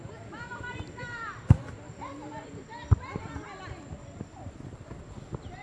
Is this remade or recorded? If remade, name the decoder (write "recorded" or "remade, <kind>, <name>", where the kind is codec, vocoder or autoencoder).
recorded